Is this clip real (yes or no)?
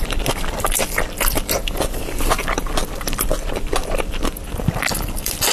no